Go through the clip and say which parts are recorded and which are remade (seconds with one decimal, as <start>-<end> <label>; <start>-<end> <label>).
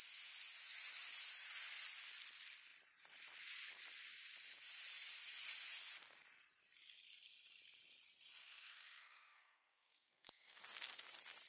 0.0-8.4 recorded; 8.4-10.6 remade; 10.6-11.5 recorded